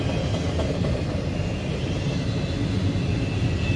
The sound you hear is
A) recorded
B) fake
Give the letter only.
A